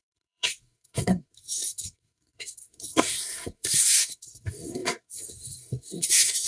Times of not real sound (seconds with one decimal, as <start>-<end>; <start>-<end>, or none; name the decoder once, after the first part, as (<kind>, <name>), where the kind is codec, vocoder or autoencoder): 0.0-6.5 (codec, SNAC)